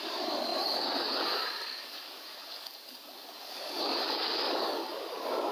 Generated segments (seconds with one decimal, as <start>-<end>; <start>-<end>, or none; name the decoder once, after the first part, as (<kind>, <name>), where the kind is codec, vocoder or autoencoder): 0.0-5.5 (codec, DAC)

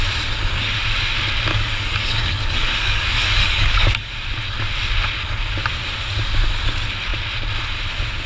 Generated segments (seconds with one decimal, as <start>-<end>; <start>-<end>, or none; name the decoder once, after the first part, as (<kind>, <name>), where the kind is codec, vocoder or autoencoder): 1.5-4.1 (codec, DAC)

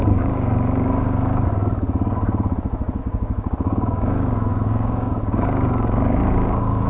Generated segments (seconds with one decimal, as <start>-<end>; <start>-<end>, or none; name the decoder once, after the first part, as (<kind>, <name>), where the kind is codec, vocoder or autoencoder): 0.0-1.3 (codec, DAC); 3.0-6.9

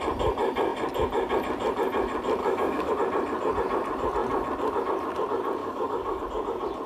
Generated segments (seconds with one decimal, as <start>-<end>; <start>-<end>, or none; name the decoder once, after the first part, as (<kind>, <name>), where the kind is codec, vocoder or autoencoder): 2.4-2.9 (codec, DAC); 5.6-6.2

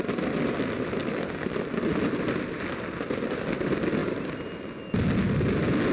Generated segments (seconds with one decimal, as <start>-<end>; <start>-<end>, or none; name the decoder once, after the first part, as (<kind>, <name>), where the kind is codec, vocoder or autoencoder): none

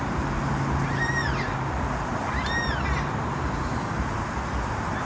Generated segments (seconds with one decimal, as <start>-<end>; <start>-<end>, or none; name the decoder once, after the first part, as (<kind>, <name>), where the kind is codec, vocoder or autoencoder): none

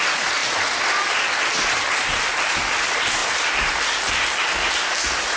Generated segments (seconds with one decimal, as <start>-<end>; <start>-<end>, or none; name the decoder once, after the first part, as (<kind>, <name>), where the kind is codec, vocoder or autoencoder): none

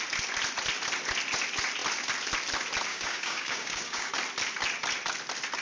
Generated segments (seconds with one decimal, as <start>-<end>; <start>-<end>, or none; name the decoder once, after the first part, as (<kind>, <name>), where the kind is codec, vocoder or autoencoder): 2.9-4.1 (codec, DAC)